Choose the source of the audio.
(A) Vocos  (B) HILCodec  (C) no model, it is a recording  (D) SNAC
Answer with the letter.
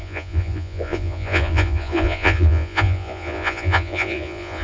A